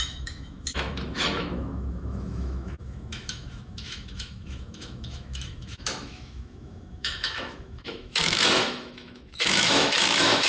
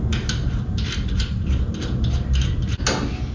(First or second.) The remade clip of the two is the first